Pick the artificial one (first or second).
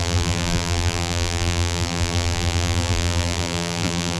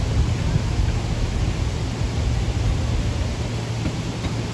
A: first